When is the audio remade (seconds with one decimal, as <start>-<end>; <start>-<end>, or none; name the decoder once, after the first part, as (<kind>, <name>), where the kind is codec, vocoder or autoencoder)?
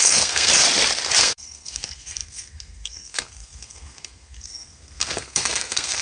0.0-0.5 (codec, SNAC); 1.2-6.0